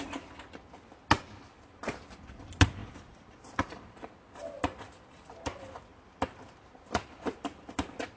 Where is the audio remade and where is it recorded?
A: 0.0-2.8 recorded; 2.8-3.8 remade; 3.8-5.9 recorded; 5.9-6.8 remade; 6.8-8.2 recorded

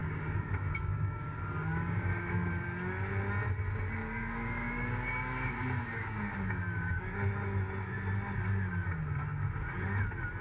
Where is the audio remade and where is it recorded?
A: 0.0-2.5 remade; 2.5-4.0 recorded; 4.0-7.3 remade; 7.3-10.4 recorded

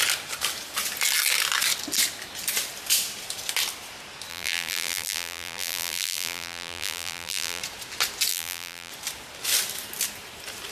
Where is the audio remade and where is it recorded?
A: 0.0-4.3 recorded; 4.3-7.6 remade; 7.6-8.3 recorded; 8.3-8.9 remade; 8.9-10.7 recorded

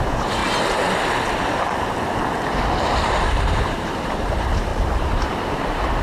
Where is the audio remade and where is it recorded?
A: 0.0-0.4 remade; 0.4-3.1 recorded; 3.1-6.0 remade

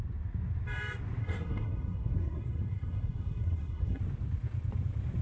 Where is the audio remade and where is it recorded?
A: 0.0-1.2 recorded; 1.2-4.0 remade; 4.0-5.2 recorded

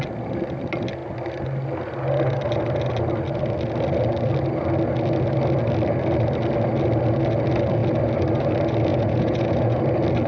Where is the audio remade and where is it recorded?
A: 0.0-8.9 recorded; 8.9-9.8 remade; 9.8-10.3 recorded

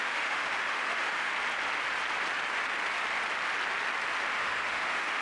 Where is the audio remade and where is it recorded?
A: 0.0-1.3 remade; 1.3-4.4 recorded; 4.4-5.2 remade

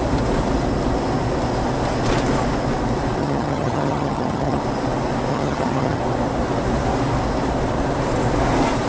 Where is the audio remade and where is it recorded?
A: 0.0-3.2 recorded; 3.2-4.6 remade; 4.6-5.3 recorded; 5.3-6.0 remade; 6.0-8.9 recorded